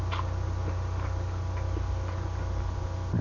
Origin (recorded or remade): recorded